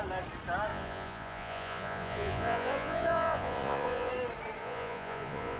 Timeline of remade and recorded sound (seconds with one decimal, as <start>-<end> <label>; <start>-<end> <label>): 0.0-0.7 recorded; 0.7-4.1 remade; 4.1-4.6 recorded; 4.6-5.6 remade